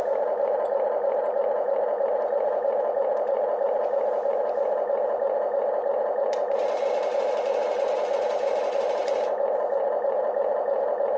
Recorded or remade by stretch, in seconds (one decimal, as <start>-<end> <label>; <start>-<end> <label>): 0.0-11.2 remade